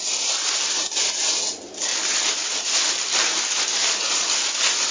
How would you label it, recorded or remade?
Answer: recorded